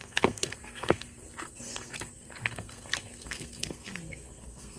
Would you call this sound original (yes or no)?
no